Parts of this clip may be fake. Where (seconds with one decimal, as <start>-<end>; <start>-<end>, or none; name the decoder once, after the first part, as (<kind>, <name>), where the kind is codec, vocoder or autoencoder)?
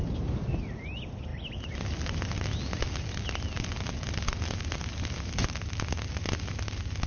none